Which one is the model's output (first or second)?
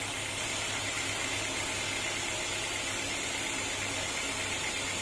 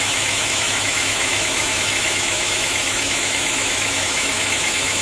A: second